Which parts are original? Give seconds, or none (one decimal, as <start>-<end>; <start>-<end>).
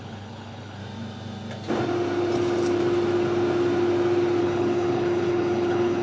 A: 0.8-4.4